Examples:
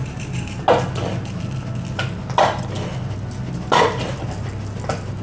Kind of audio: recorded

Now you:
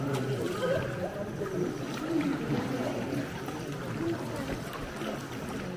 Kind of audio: recorded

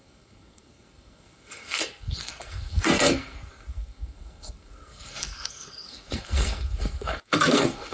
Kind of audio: remade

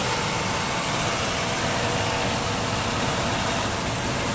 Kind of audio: recorded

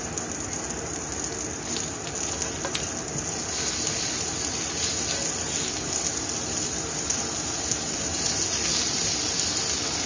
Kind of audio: recorded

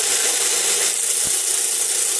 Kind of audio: recorded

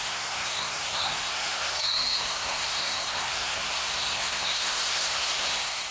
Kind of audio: remade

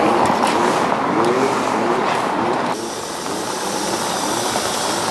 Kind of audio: recorded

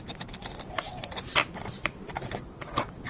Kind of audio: remade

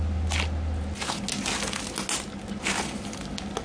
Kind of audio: recorded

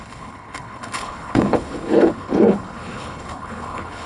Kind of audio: remade